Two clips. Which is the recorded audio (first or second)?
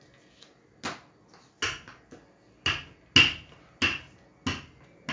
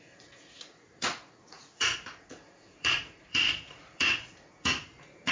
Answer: first